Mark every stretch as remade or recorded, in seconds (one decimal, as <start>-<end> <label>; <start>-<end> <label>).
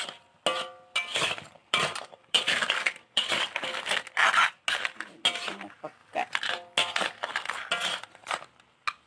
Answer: 0.0-1.6 recorded; 1.6-3.6 remade; 3.6-9.1 recorded